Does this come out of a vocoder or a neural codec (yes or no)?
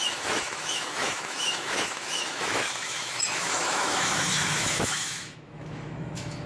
yes